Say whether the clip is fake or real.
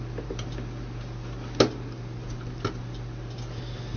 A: real